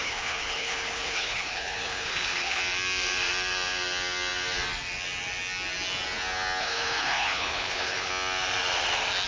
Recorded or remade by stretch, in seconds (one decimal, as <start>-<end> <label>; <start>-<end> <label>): 0.0-2.6 remade; 2.6-6.6 recorded; 6.6-8.1 remade; 8.1-9.3 recorded